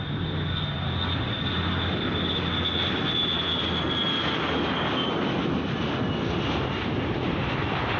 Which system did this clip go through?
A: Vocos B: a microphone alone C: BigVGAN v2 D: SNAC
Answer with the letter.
B